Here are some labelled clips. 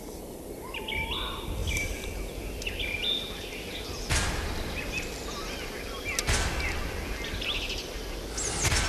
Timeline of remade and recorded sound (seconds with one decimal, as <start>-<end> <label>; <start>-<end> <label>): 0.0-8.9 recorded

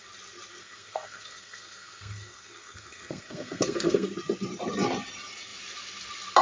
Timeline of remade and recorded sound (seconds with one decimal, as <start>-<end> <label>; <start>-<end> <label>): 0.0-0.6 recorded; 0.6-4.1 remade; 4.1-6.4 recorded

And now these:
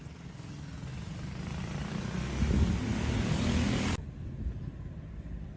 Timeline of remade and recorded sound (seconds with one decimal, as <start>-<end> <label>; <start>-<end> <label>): 0.0-5.6 recorded